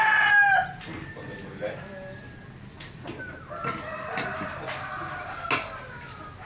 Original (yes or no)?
yes